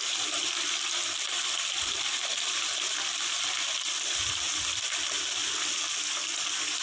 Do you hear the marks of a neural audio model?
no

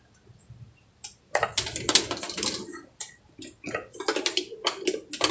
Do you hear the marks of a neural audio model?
no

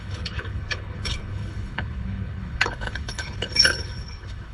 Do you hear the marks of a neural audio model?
yes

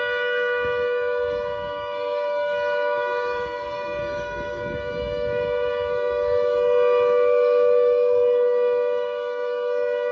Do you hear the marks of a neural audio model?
yes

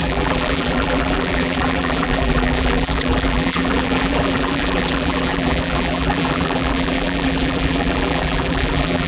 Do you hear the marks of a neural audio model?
yes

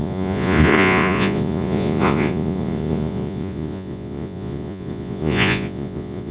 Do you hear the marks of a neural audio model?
yes